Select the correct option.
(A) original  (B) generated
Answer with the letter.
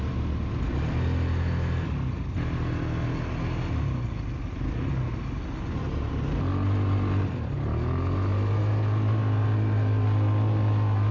A